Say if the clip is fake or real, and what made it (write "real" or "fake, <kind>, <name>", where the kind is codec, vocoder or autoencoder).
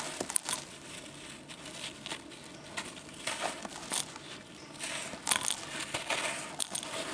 real